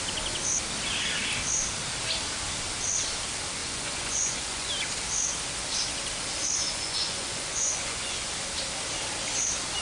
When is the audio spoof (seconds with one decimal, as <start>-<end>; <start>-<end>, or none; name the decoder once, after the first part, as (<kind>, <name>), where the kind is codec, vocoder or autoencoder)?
3.6-4.7 (vocoder, Vocos); 6.6-8.3